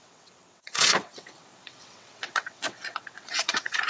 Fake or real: fake